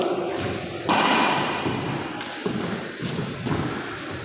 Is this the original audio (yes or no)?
yes